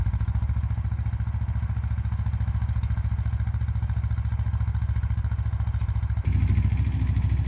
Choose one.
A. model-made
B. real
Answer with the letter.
B